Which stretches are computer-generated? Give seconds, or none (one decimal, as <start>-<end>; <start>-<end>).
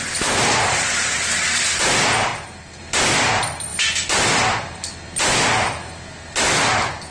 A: none